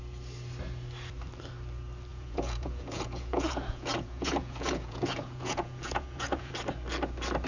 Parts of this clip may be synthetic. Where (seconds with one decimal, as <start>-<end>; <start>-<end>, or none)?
2.1-6.5